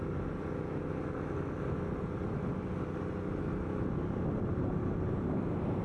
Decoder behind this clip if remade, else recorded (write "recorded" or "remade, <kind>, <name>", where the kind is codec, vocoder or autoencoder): recorded